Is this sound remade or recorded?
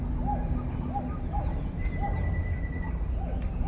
recorded